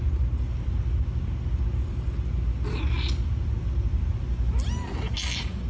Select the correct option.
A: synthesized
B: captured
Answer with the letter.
B